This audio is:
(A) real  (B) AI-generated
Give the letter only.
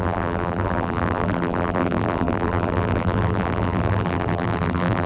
B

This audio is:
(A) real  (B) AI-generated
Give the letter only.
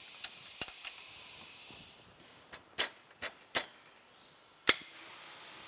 B